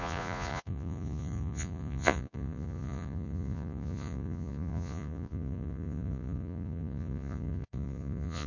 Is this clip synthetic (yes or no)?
yes